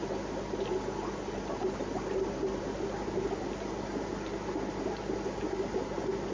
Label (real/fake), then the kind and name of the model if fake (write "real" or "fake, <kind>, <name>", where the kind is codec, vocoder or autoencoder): real